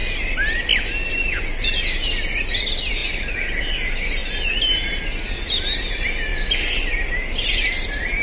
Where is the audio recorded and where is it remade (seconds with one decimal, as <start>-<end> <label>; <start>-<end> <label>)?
0.0-8.2 recorded